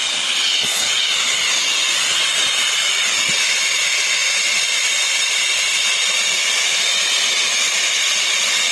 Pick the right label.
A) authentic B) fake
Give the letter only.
A